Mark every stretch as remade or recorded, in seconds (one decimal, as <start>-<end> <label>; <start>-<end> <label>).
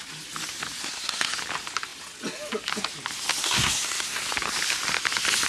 0.0-0.8 recorded; 0.8-1.3 remade; 1.3-3.4 recorded; 3.4-4.2 remade; 4.2-5.5 recorded